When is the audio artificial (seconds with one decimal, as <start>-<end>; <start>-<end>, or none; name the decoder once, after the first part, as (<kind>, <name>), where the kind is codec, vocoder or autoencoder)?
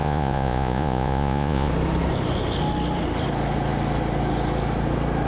0.0-1.7 (vocoder, Vocos)